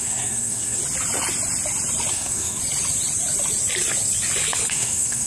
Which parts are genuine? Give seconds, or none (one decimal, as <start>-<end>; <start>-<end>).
0.8-2.1; 2.6-4.7